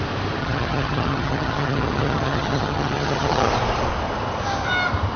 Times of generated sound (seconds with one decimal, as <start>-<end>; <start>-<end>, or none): 0.4-3.5